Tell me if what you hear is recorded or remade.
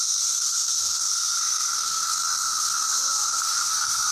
remade